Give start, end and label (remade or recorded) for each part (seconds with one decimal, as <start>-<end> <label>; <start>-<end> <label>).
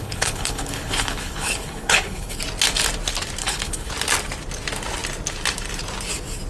0.0-2.4 remade; 2.4-3.4 recorded; 3.4-3.9 remade; 3.9-6.5 recorded